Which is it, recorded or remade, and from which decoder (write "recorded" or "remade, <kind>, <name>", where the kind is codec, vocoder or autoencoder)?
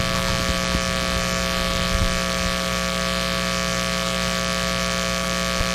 recorded